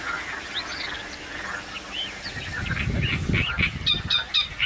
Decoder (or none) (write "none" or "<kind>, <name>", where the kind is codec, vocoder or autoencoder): none